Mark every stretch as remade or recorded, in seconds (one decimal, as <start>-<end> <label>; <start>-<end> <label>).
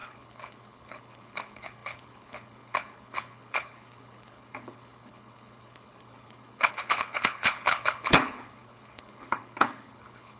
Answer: 0.0-10.4 remade